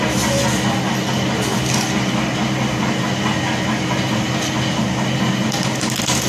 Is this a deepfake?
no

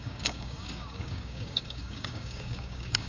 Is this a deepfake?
yes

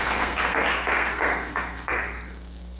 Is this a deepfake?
yes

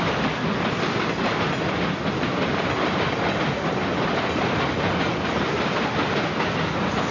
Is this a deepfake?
yes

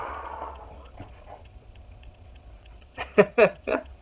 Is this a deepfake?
yes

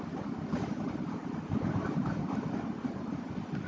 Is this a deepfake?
no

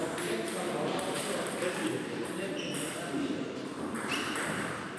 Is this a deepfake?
yes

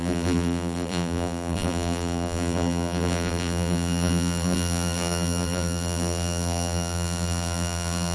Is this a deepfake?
yes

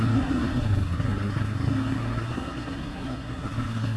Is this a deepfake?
yes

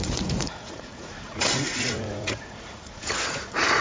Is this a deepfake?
yes